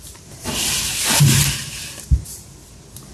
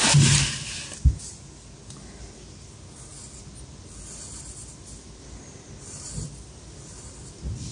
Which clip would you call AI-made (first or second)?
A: first